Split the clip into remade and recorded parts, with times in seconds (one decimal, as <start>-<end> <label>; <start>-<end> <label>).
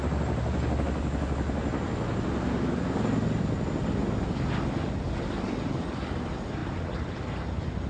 0.0-7.9 recorded